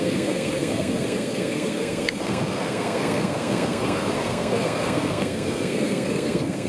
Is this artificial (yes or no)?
yes